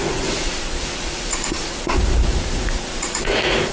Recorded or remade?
remade